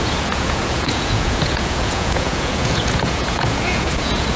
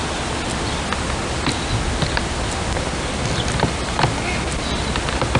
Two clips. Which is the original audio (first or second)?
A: second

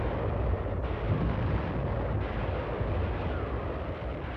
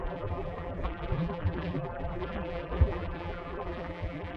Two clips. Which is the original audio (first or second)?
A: first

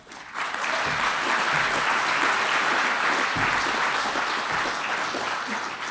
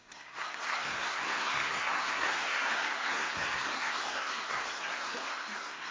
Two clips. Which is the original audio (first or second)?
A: first